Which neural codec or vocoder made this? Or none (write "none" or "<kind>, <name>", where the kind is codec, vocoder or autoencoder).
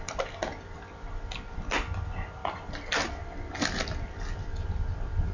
none